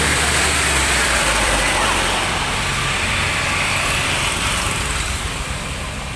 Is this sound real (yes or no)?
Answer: no